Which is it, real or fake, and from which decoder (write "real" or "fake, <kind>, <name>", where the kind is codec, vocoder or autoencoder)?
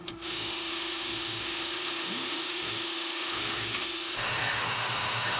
fake, autoencoder, DAC-VAE